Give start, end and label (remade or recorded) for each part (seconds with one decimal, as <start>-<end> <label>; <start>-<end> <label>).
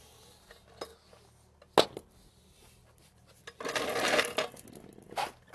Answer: 0.0-5.5 recorded